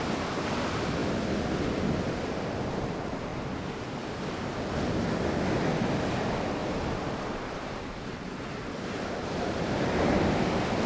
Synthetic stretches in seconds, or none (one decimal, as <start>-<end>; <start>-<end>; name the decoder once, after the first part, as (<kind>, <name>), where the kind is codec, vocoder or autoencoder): 6.6-10.3 (vocoder, BigVGAN v2)